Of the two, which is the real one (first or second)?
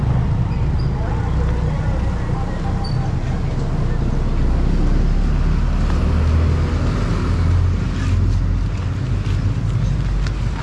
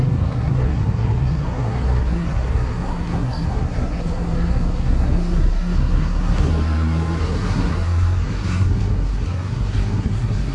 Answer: first